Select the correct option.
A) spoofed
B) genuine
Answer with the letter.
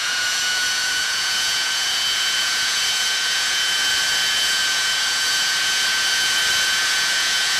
A